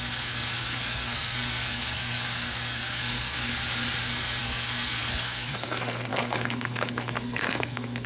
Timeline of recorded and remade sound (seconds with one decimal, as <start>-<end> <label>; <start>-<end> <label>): 0.0-3.4 remade; 3.4-4.0 recorded; 4.0-8.1 remade